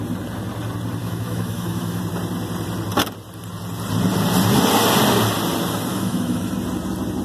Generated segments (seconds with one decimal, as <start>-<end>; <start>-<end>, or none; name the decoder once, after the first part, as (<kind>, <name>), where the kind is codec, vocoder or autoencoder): 1.0-2.0 (autoencoder, DAC-VAE); 5.9-6.5